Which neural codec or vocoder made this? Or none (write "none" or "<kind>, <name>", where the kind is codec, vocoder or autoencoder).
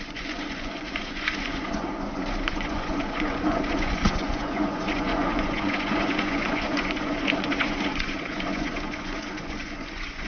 vocoder, Vocos